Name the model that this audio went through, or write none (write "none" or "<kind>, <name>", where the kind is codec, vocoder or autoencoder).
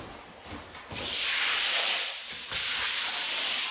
vocoder, BigVGAN v2